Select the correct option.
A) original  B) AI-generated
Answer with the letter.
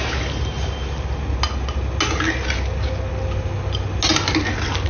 A